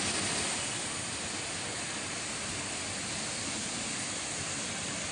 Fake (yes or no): no